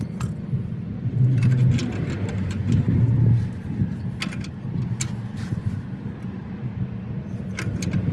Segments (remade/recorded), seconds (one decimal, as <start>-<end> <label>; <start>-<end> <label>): 0.0-8.1 recorded